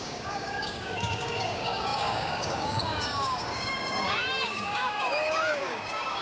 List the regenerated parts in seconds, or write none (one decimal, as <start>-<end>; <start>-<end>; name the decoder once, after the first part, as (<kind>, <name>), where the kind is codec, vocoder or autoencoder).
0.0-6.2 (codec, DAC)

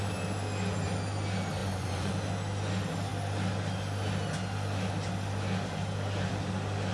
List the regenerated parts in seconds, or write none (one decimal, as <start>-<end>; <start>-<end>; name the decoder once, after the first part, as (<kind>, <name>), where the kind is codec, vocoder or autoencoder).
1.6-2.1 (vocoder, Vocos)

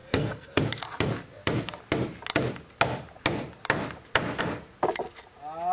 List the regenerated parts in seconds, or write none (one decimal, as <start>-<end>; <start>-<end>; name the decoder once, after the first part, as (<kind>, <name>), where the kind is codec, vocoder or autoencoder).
0.0-0.6 (codec, SNAC)